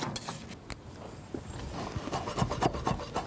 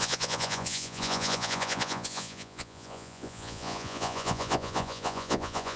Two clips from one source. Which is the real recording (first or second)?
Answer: first